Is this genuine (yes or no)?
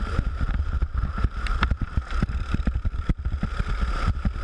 no